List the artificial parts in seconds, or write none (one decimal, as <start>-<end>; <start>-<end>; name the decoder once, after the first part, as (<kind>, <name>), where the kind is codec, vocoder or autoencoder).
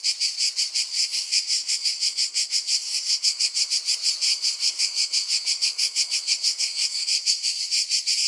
0.9-3.7 (codec, SNAC); 4.3-7.6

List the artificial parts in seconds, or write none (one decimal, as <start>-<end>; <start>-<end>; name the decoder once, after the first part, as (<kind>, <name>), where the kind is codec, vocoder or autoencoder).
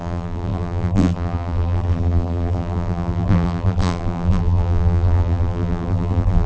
0.0-6.5 (vocoder, BigVGAN v2)